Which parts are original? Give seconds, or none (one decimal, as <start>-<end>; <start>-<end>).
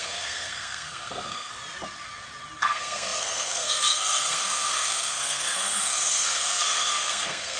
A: 1.5-2.6